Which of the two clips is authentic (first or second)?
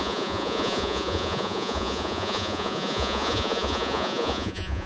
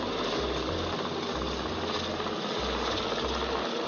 second